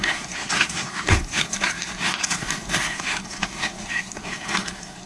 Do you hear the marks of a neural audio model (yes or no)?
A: yes